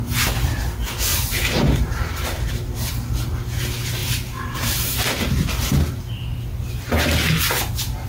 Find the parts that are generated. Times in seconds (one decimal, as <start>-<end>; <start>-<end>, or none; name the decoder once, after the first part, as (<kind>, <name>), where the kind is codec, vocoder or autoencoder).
1.1-2.5 (vocoder, BigVGAN v2); 4.0-5.0

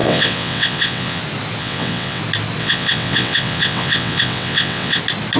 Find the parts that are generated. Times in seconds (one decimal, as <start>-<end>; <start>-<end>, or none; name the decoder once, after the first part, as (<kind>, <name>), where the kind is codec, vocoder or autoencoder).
0.0-1.2 (vocoder, WaveNeXt); 1.6-2.2; 2.6-5.0

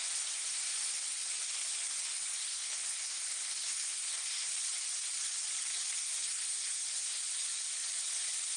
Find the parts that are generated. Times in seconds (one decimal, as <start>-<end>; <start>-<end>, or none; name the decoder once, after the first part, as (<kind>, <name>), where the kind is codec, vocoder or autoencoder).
0.0-0.7 (codec, SNAC); 2.3-4.5; 6.0-7.2

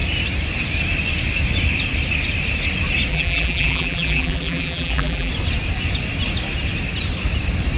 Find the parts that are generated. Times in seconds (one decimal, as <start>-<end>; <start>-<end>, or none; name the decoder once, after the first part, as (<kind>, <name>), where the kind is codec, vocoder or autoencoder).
3.1-5.3 (vocoder, BigVGAN v2)

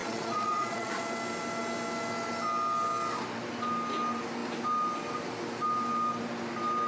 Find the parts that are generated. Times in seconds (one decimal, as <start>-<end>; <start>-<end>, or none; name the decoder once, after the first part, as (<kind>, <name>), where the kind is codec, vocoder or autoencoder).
0.0-1.0 (vocoder, Vocos)

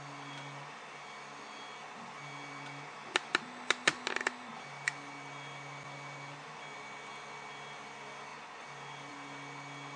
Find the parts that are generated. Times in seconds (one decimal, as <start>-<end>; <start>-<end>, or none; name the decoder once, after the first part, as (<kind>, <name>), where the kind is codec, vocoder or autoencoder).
none

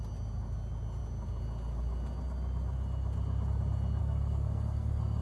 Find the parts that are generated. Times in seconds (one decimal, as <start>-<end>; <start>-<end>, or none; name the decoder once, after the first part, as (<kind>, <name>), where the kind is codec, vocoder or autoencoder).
4.0-5.2 (codec, SNAC)

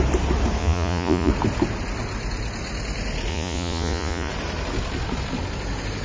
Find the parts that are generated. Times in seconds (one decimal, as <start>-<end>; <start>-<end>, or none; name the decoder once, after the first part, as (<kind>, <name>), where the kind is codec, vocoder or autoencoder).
0.6-1.3 (vocoder, Vocos); 3.3-4.3